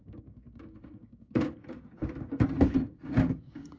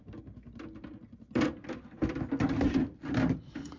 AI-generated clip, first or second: first